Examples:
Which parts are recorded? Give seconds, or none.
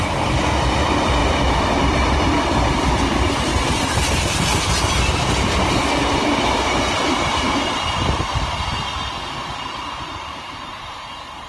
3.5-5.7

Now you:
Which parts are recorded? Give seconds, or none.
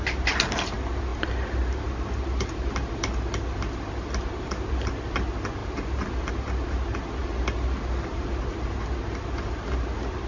0.0-1.1; 4.7-5.6; 6.3-7.2; 8.2-10.3